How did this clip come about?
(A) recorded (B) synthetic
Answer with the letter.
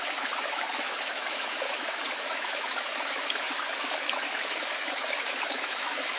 B